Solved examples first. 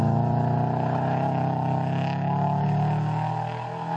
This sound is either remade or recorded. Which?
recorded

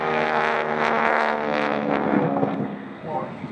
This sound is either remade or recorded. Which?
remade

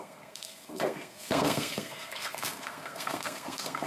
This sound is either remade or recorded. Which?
remade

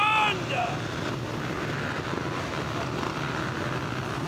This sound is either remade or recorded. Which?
recorded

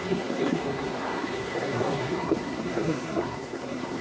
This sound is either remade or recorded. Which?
remade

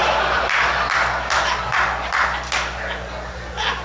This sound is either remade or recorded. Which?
recorded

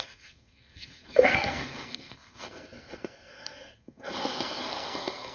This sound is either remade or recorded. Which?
remade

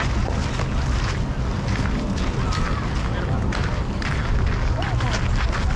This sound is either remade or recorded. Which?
recorded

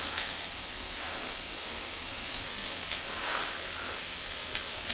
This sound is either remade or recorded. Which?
remade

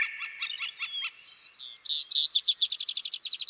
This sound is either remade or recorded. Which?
recorded